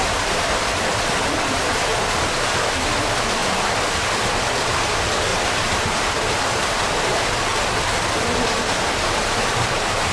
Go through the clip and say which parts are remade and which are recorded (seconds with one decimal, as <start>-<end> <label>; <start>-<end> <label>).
0.0-1.9 remade; 1.9-3.0 recorded; 3.0-3.4 remade; 3.4-3.9 recorded; 3.9-7.5 remade; 7.5-9.6 recorded; 9.6-10.1 remade